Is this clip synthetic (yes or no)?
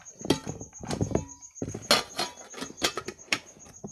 no